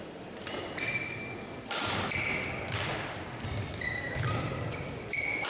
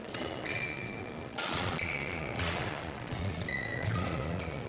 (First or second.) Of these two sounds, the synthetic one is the second